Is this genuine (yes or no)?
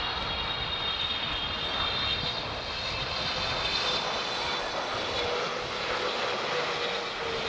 yes